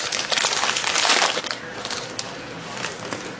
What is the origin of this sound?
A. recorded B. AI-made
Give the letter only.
A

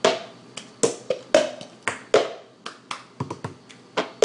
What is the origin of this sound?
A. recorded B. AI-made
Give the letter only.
A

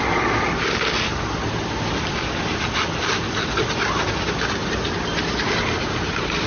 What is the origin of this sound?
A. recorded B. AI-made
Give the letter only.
A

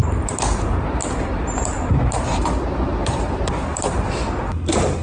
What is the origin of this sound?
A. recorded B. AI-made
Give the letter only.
B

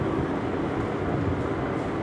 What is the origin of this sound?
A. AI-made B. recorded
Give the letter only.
B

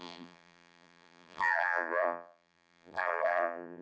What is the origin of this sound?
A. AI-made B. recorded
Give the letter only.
A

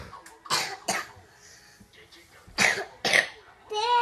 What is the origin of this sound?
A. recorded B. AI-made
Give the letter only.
A